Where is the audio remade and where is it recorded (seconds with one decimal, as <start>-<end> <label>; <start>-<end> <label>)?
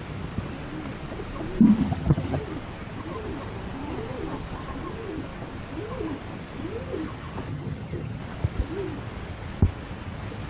0.0-1.8 recorded; 1.8-2.4 remade; 2.4-7.5 recorded; 7.5-8.2 remade; 8.2-10.5 recorded